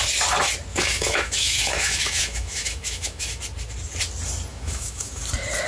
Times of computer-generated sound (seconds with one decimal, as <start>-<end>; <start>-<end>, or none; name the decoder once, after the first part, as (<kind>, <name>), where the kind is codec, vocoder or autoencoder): 0.7-3.4 (autoencoder, DAC-VAE); 4.5-5.2